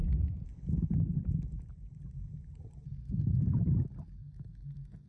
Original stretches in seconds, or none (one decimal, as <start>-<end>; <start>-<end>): 0.0-4.2